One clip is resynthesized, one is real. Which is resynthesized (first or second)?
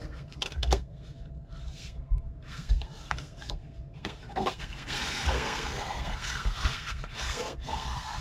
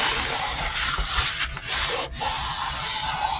first